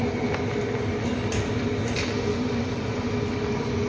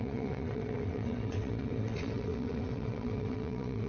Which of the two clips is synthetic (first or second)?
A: second